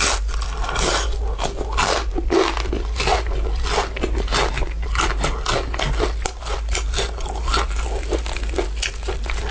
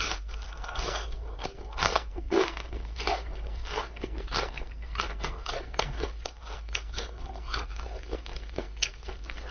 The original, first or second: first